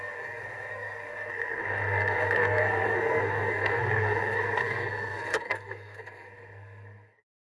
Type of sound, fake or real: fake